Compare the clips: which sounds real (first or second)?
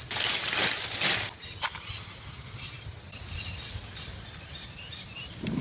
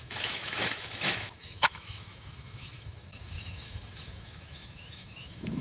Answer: first